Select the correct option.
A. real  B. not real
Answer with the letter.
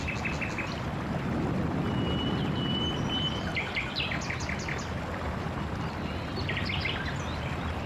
A